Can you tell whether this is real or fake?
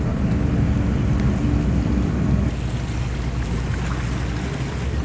real